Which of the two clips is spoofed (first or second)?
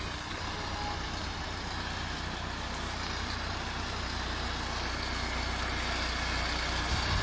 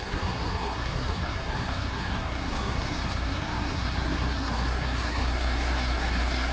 second